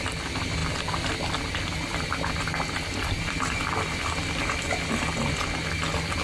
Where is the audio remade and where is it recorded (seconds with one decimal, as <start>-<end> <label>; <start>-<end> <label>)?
0.0-6.2 recorded